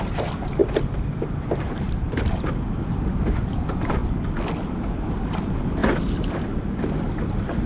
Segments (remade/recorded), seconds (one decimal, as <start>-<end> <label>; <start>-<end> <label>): 0.0-0.6 remade; 0.6-1.2 recorded; 1.2-4.0 remade; 4.0-4.7 recorded; 4.7-5.8 remade; 5.8-7.3 recorded; 7.3-7.7 remade